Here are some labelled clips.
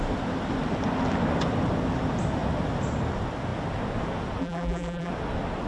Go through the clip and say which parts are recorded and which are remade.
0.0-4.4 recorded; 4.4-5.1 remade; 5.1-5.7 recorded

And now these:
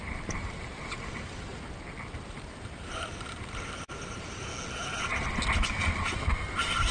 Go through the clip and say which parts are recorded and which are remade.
0.0-1.5 remade; 1.5-2.3 recorded; 2.3-4.5 remade; 4.5-6.0 recorded; 6.0-6.9 remade